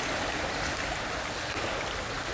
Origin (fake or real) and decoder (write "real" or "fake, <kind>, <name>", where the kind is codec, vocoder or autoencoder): real